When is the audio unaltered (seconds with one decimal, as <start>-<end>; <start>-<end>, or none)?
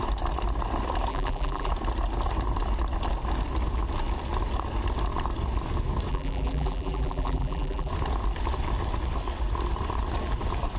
0.0-1.1; 1.7-6.1; 7.9-10.8